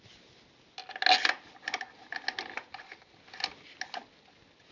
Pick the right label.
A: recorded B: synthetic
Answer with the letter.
A